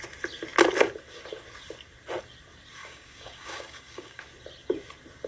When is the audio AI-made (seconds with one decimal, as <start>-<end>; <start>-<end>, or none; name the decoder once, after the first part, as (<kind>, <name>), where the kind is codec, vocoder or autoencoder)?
2.8-4.2 (codec, DAC)